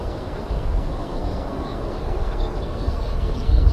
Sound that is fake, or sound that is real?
fake